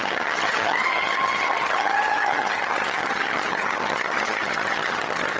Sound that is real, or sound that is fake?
fake